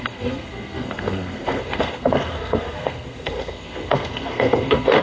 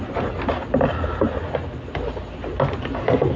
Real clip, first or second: second